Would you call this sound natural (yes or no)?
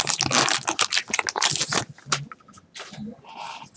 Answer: yes